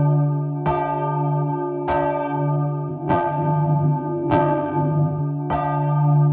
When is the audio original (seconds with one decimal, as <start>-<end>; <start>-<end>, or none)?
0.0-2.9; 5.2-6.3